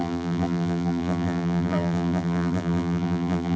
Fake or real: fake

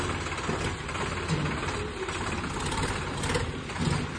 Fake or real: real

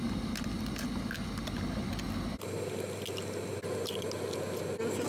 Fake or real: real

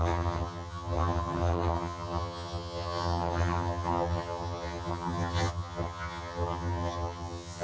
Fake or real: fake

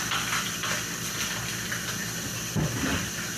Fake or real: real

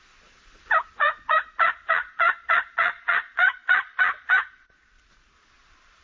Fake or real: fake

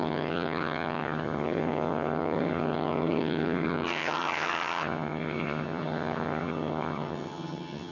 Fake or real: fake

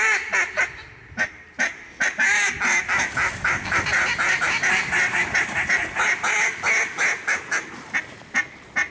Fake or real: real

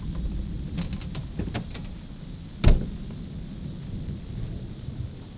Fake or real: real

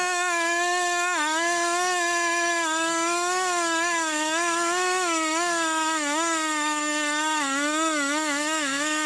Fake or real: fake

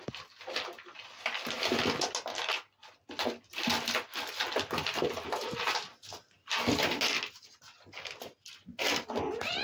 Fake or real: real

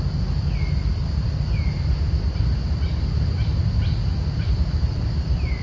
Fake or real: real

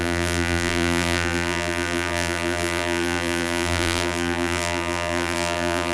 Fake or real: fake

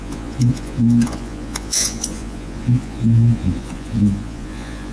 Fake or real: fake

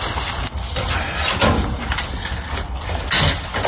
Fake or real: real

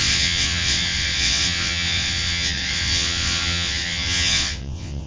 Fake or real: fake